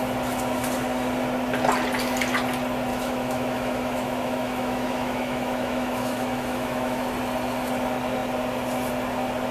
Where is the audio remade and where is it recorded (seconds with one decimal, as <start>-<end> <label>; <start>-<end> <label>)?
0.0-2.9 recorded; 2.9-7.0 remade; 7.0-9.5 recorded